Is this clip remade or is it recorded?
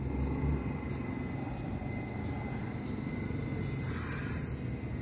recorded